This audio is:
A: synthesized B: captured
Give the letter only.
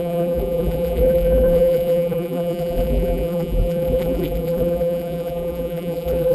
A